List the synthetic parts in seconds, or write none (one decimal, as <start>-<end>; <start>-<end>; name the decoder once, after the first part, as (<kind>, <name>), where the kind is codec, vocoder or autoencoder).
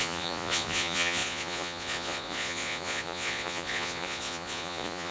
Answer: 0.0-5.1 (vocoder, Vocos)